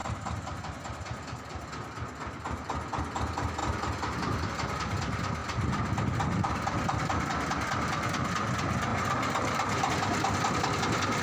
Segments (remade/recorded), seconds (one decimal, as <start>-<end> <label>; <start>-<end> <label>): 0.0-0.6 remade; 0.6-8.9 recorded; 8.9-9.9 remade; 9.9-11.2 recorded